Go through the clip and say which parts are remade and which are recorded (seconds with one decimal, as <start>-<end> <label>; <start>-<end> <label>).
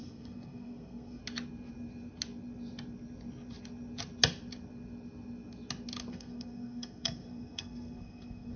0.0-1.2 remade; 1.2-6.1 recorded; 6.1-8.6 remade